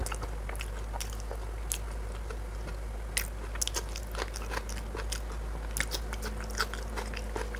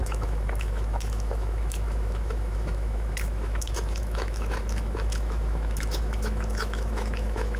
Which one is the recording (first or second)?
first